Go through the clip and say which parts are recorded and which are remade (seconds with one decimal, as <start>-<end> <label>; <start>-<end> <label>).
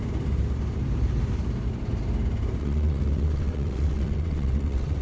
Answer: 0.0-2.6 recorded; 2.6-5.0 remade